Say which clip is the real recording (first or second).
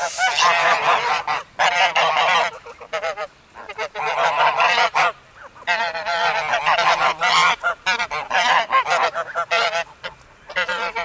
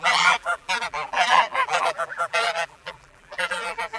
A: first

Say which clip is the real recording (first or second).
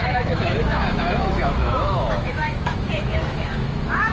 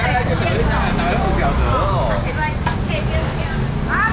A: second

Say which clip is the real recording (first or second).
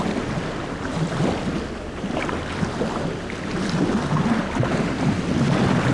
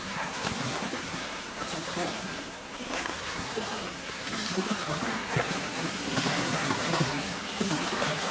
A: first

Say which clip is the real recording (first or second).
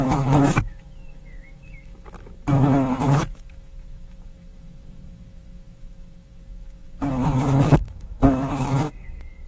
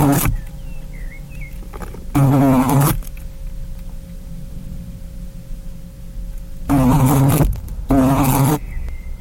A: second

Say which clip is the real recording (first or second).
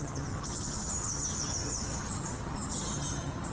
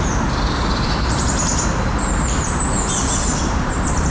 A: second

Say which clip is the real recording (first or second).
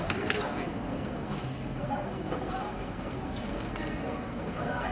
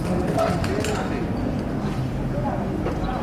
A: second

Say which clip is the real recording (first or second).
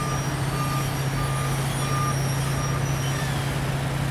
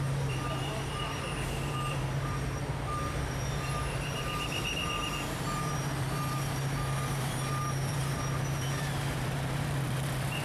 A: first